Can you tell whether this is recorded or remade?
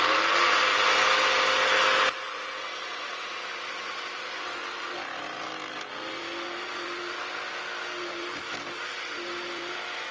recorded